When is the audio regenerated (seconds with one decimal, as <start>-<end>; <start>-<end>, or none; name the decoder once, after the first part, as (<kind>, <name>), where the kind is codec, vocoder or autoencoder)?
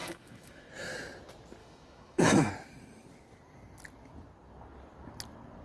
0.0-0.7 (autoencoder, DAC-VAE); 1.6-2.5